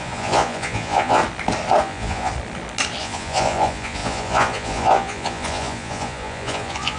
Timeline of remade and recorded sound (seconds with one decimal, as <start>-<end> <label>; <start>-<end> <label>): 0.0-1.2 remade; 1.2-1.8 recorded; 1.8-2.3 remade; 2.3-3.0 recorded; 3.0-7.0 remade